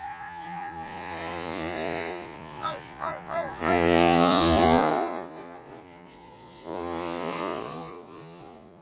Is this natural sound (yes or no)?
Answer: no